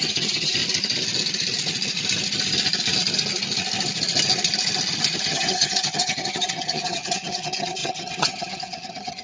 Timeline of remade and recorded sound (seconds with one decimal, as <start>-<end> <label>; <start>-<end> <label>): 0.0-0.6 remade; 0.6-5.3 recorded; 5.3-9.2 remade